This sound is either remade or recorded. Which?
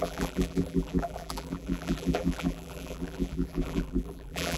remade